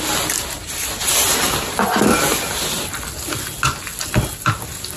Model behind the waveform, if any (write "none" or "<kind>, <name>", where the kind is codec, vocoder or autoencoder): none